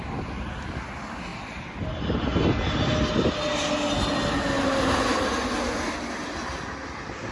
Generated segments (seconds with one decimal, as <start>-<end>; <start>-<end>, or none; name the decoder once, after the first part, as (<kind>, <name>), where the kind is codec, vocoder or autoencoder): none